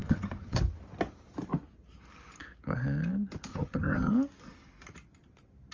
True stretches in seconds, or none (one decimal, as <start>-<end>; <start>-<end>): 0.6-3.5; 4.1-5.7